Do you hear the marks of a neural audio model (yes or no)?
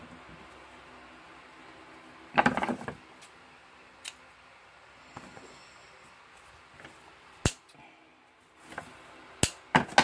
no